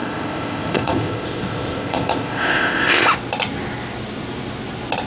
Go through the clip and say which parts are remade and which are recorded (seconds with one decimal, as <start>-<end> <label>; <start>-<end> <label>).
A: 0.0-3.0 remade; 3.0-5.1 recorded